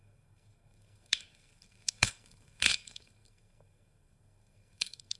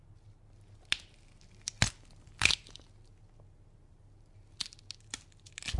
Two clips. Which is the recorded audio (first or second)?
second